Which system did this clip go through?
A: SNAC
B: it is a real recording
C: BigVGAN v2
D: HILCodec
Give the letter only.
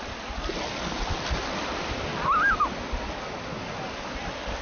C